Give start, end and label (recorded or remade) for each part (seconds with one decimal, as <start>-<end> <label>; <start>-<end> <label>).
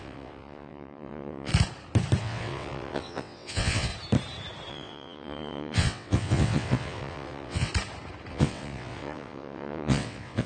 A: 0.0-1.5 remade; 1.5-2.2 recorded; 2.2-3.9 remade; 3.9-4.7 recorded; 4.7-7.7 remade; 7.7-8.3 recorded; 8.3-10.5 remade